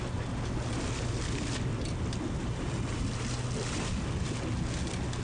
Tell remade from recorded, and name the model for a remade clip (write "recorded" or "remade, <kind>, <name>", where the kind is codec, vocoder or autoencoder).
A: recorded